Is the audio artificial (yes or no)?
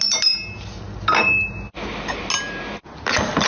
no